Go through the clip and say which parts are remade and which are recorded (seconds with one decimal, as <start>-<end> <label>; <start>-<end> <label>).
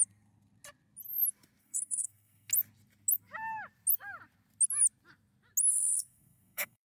0.0-1.6 recorded; 1.6-2.5 remade; 2.5-5.7 recorded; 5.7-6.9 remade